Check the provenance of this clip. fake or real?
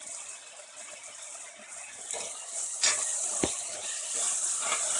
real